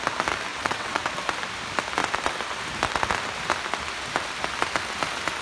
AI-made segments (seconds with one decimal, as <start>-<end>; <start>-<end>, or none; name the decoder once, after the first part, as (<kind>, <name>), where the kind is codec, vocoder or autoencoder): 0.5-1.1 (vocoder, WaveNeXt)